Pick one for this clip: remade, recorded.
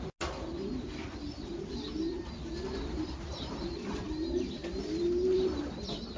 recorded